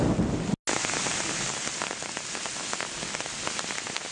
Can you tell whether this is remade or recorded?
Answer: recorded